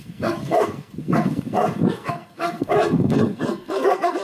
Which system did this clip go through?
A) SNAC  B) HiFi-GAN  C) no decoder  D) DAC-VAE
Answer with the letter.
A